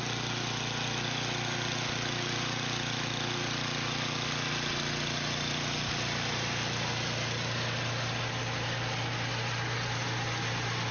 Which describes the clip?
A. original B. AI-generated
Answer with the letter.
A